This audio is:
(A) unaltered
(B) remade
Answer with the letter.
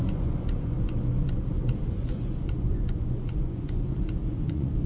B